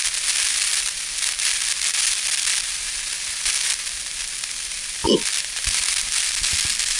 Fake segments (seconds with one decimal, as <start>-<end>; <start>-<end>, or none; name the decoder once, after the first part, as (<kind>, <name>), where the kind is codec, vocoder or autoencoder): none